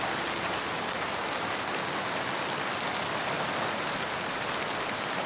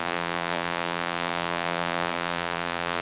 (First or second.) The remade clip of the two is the second